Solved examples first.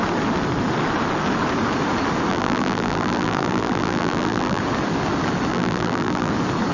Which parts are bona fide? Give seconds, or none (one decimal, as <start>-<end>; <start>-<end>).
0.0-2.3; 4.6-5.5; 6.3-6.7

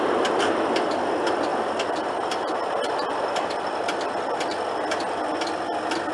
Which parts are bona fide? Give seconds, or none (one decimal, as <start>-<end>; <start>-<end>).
0.0-1.5; 5.2-6.1

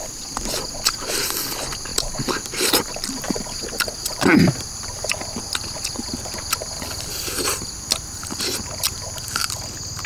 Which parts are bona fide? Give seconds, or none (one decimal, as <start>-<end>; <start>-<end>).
0.0-1.9; 5.2-10.1